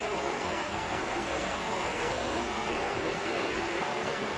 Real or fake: fake